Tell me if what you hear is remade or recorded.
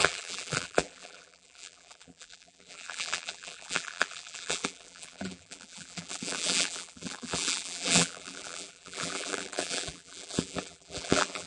remade